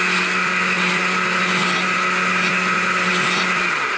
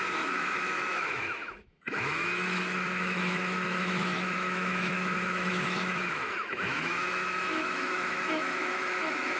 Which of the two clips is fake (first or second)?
second